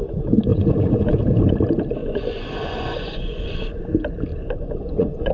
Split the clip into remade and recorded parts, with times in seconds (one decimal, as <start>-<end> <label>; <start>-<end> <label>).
0.0-0.5 recorded; 0.5-1.2 remade; 1.2-2.0 recorded; 2.0-3.8 remade; 3.8-4.3 recorded; 4.3-5.3 remade